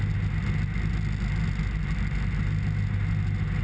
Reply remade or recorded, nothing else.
recorded